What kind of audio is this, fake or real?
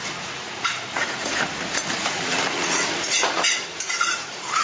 fake